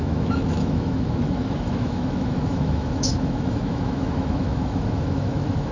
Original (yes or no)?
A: no